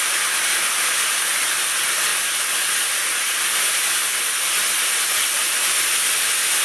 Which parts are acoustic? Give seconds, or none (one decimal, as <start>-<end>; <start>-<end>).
0.0-6.6